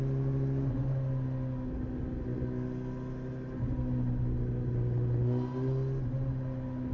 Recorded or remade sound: recorded